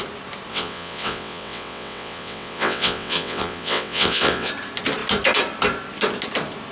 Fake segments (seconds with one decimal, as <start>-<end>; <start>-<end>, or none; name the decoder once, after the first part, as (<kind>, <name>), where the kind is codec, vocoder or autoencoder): 0.5-4.5 (vocoder, WaveNeXt)